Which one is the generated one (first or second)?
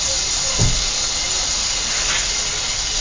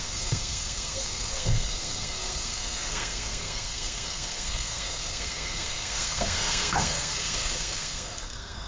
second